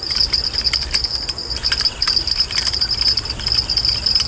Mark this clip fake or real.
real